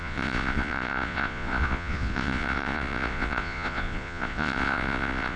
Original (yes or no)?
no